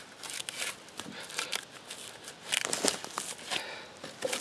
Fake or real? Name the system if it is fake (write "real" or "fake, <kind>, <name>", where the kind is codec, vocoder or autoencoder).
real